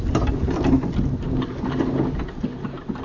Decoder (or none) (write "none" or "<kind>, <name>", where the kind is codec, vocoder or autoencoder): none